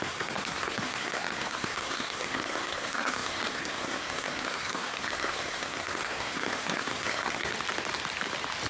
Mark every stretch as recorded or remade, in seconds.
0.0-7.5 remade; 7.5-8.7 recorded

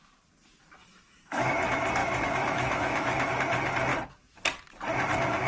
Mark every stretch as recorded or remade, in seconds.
0.0-0.8 recorded; 0.8-1.5 remade; 1.5-2.0 recorded; 2.0-3.3 remade; 3.3-5.5 recorded

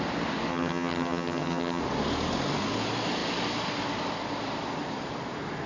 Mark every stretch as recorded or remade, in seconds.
0.0-0.5 recorded; 0.5-1.8 remade; 1.8-5.7 recorded

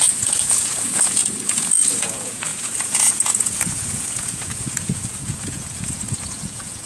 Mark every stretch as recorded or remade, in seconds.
0.0-6.9 remade

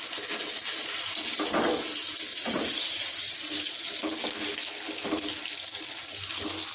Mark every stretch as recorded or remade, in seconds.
0.0-2.3 recorded; 2.3-3.2 remade; 3.2-6.7 recorded